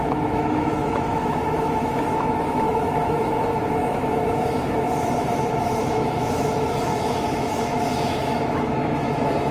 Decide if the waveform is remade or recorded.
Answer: remade